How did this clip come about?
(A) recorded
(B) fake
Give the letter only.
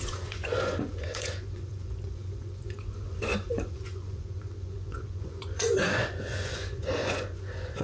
B